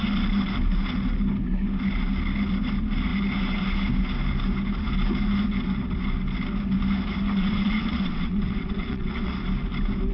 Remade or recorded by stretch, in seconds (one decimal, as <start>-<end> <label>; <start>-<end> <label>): 0.0-7.4 recorded; 7.4-9.3 remade; 9.3-10.1 recorded